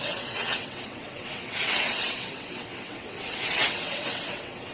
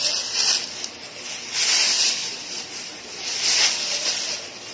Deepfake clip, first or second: first